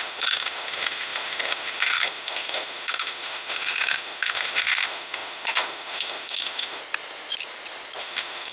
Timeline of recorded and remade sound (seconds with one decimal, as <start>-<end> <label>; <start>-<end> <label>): 0.0-6.8 remade; 6.8-8.0 recorded; 8.0-8.5 remade